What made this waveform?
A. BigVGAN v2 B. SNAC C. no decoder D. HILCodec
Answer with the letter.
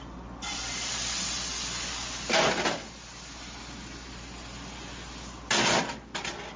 C